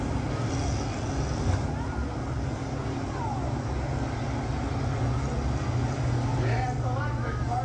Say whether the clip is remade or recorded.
recorded